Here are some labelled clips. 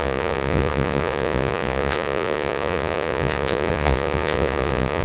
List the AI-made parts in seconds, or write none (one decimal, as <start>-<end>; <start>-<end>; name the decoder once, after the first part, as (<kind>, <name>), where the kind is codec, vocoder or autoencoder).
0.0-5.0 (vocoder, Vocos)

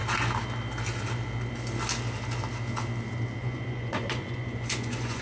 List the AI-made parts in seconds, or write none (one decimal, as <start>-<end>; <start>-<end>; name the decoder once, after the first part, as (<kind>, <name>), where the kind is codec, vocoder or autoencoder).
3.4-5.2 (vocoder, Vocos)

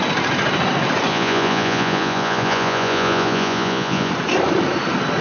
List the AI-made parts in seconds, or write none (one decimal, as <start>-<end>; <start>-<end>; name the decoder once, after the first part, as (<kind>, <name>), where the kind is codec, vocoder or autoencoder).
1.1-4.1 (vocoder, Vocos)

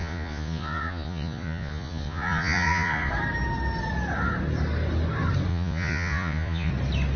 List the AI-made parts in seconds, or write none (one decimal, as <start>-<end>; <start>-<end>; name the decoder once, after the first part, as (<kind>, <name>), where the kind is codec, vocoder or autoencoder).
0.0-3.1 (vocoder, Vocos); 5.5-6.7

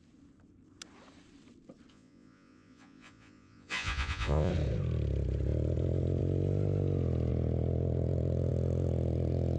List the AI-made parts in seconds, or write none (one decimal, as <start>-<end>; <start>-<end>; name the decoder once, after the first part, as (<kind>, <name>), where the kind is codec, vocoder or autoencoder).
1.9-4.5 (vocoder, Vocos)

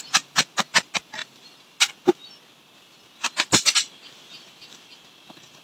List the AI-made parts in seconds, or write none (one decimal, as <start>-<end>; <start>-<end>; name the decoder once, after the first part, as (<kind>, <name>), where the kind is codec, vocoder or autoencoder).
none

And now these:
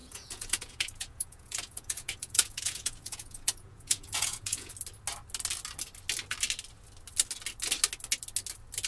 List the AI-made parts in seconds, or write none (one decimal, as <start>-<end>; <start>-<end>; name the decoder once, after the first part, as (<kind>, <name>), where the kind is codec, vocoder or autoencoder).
0.0-4.7 (vocoder, Vocos)